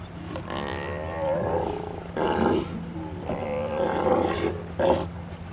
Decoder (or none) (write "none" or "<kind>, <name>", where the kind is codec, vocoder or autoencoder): none